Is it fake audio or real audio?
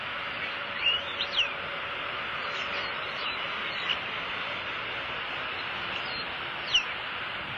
real